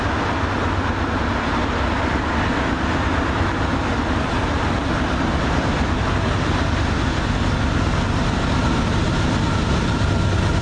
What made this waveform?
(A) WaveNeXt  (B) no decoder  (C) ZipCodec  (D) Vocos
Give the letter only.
B